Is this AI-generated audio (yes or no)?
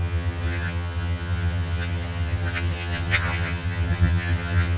yes